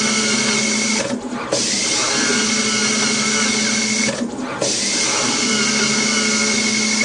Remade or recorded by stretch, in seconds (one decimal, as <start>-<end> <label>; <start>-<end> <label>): 0.0-7.0 recorded